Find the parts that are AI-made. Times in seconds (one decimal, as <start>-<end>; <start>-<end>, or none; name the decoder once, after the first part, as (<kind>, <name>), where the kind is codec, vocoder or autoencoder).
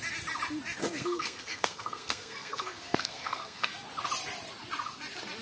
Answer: 0.8-3.7 (codec, SNAC)